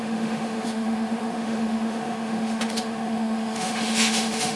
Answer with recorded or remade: remade